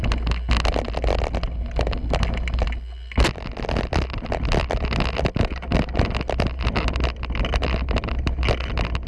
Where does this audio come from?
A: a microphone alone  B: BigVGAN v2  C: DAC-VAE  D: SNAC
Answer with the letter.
A